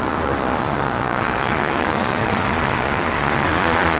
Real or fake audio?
fake